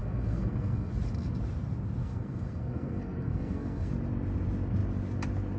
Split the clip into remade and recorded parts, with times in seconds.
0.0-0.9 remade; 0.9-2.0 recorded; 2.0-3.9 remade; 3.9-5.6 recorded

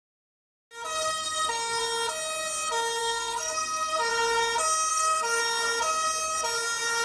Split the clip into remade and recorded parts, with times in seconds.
0.0-1.2 recorded; 1.2-1.8 remade; 1.8-3.0 recorded; 3.0-4.1 remade; 4.1-4.9 recorded; 4.9-5.4 remade; 5.4-7.0 recorded